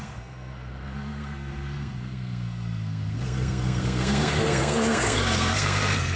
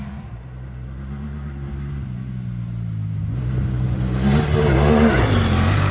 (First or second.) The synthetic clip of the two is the first